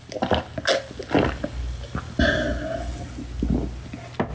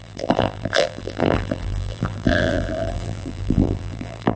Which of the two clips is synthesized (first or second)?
second